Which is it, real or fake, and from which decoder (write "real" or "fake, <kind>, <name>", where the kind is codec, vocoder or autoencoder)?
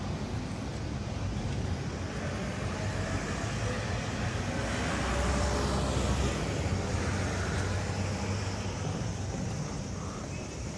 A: real